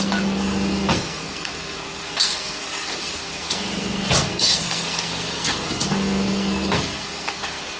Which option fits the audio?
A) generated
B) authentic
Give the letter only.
A